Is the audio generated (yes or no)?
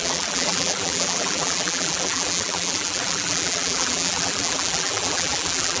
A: yes